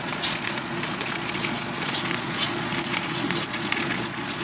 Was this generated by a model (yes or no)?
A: yes